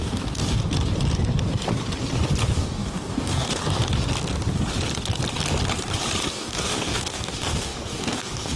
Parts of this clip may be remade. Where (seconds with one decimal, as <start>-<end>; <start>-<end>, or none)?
0.0-0.6; 2.6-3.6; 6.3-8.6